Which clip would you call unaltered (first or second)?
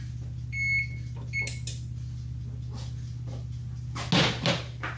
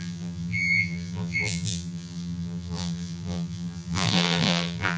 first